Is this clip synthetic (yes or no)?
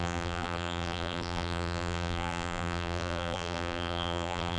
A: yes